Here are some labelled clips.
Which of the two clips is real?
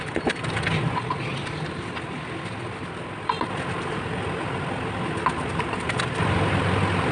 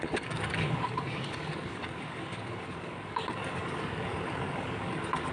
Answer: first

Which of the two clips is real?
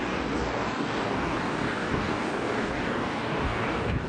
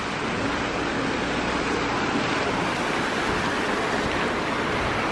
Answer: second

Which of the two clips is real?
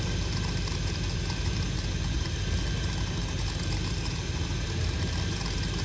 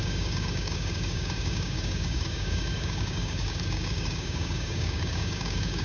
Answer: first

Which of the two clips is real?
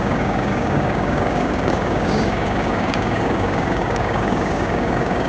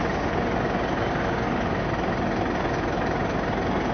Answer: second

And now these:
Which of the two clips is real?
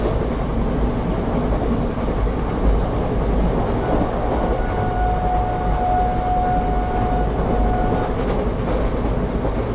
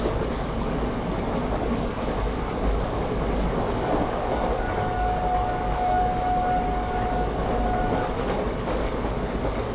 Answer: first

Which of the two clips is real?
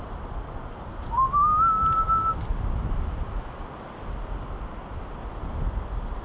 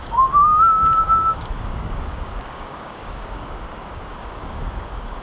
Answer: first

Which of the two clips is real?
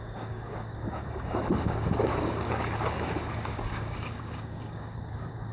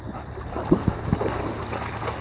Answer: second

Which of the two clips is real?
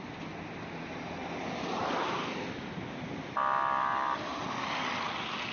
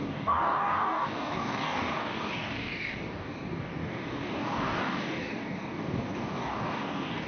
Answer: first